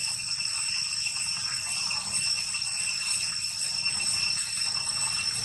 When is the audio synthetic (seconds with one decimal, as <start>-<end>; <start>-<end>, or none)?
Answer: 0.0-0.7; 2.3-2.9

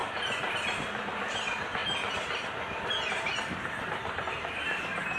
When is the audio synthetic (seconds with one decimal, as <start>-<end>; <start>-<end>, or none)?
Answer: 0.5-5.2

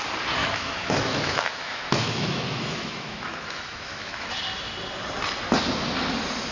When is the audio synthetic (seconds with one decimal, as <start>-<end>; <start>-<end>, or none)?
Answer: 0.4-4.3

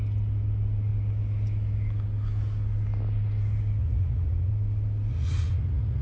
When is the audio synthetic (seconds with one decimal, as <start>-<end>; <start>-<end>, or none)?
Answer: 3.8-4.5; 5.1-6.0